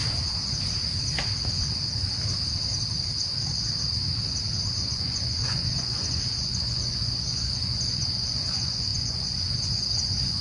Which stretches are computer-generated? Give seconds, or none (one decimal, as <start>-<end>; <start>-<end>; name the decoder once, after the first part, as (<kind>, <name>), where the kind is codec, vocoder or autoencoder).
4.8-10.4 (vocoder, Vocos)

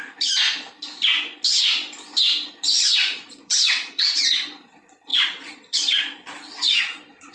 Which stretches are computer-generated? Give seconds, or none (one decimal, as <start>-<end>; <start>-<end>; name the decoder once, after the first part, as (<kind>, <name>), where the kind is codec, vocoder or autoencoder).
3.0-4.5 (vocoder, Vocos); 5.1-7.3